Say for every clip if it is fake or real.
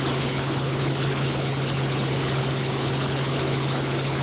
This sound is fake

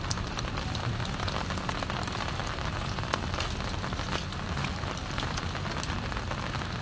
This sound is real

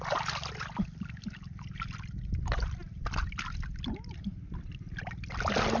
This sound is real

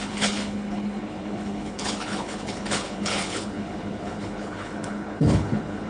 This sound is fake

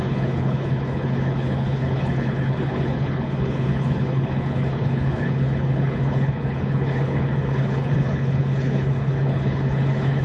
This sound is fake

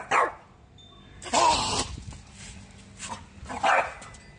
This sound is real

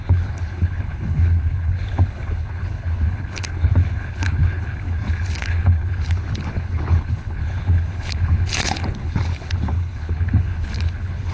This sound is fake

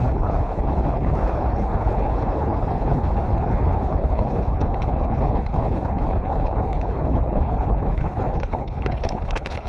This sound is fake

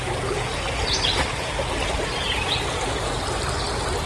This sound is real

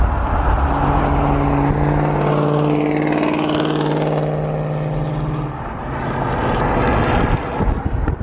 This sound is real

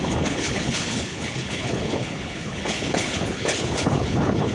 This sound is fake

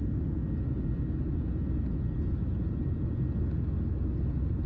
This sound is real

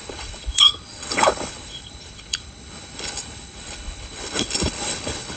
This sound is fake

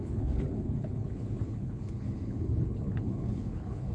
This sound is fake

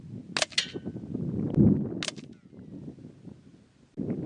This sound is real